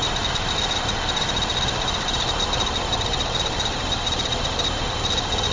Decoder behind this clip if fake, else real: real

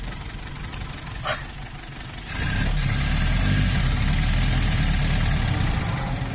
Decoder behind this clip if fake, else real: real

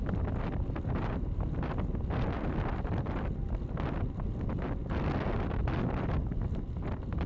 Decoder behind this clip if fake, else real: real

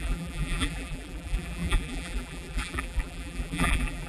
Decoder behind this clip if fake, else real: fake, vocoder, BigVGAN v2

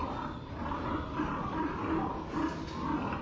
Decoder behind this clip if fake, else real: real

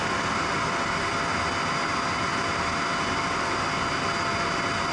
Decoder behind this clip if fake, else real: real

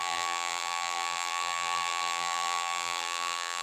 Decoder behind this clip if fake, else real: fake, vocoder, BigVGAN v2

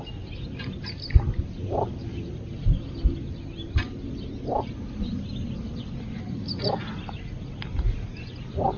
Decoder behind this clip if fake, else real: real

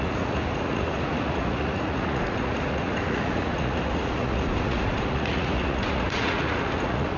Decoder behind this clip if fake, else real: fake, vocoder, Vocos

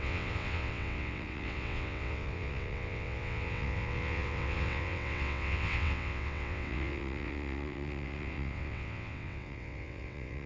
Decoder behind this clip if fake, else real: fake, vocoder, WaveNeXt